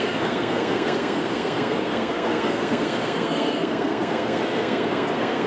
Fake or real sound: fake